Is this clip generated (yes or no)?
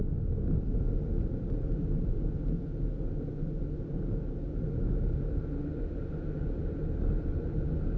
no